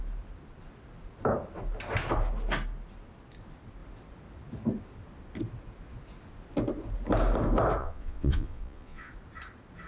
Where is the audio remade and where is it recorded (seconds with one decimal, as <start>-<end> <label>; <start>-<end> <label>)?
0.0-7.8 recorded; 7.8-9.1 remade; 9.1-9.9 recorded